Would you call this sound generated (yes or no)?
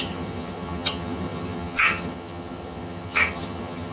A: yes